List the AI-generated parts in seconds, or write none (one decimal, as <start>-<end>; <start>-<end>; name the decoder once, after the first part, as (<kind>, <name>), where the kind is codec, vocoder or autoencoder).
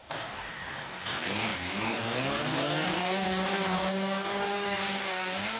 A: 0.0-5.6 (codec, DAC)